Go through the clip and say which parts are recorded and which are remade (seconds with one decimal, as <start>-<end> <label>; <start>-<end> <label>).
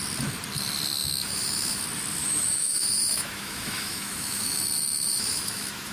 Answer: 0.0-1.0 recorded; 1.0-1.8 remade; 1.8-2.2 recorded; 2.2-5.9 remade